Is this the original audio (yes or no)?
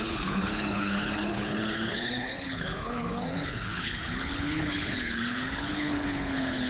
no